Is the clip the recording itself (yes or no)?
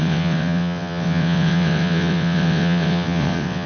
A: no